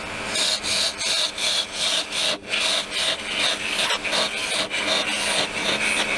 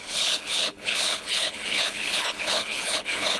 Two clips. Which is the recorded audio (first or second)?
first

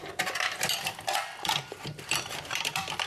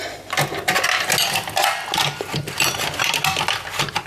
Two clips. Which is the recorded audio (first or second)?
second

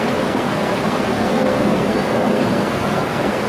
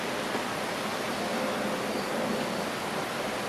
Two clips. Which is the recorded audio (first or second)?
second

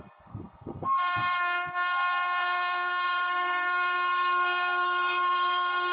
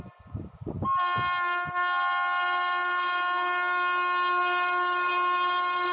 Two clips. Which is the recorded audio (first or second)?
second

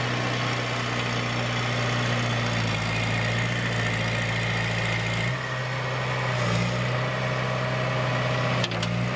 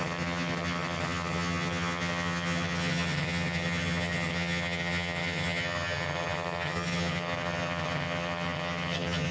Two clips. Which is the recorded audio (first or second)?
first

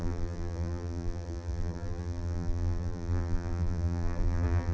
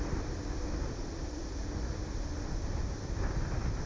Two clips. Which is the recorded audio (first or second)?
second